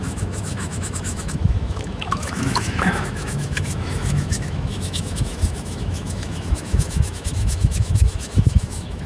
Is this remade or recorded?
remade